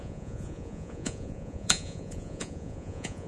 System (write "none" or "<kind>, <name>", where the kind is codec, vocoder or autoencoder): vocoder, Vocos